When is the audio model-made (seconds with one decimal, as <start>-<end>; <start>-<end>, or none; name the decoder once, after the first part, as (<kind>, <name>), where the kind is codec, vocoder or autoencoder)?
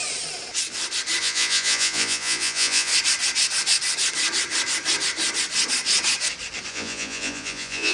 1.2-2.9 (vocoder, Vocos); 6.7-7.9